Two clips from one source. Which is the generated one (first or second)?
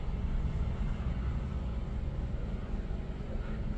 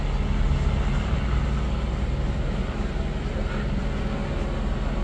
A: first